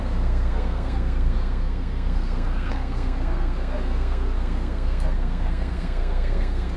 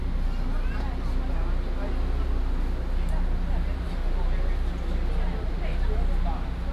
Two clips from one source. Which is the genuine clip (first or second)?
second